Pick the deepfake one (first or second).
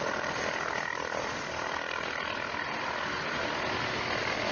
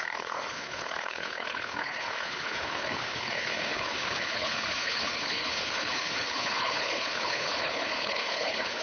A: second